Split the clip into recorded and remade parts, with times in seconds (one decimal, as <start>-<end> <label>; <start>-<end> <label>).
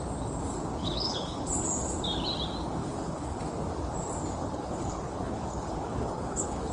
0.0-0.8 recorded; 0.8-1.5 remade; 1.5-2.8 recorded; 2.8-3.4 remade; 3.4-4.4 recorded; 4.4-6.7 remade